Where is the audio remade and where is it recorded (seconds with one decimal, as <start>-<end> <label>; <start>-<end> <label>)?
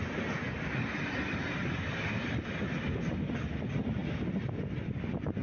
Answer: 0.0-5.4 recorded